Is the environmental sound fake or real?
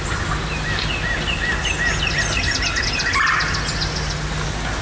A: real